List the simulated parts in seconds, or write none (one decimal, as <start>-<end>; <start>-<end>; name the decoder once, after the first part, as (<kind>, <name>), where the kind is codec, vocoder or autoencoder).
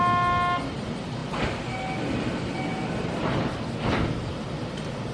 none